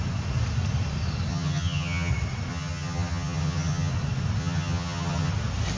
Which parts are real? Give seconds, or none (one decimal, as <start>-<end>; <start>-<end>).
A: 0.0-1.3; 2.1-2.5; 3.9-4.4; 5.3-5.8